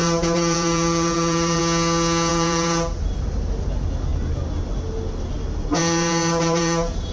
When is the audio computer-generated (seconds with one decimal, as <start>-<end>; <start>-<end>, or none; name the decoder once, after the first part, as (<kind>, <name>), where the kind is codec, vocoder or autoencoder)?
0.0-1.6 (vocoder, BigVGAN v2); 2.3-3.0; 5.8-7.1